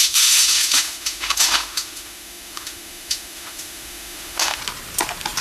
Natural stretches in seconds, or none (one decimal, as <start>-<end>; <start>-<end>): 4.6-5.4